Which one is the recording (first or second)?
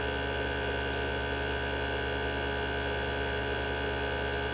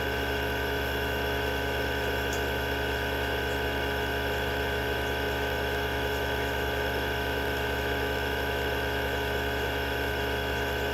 first